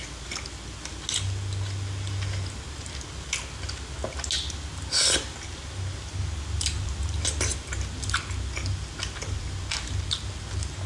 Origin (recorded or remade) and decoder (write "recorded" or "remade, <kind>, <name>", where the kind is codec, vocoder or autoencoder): recorded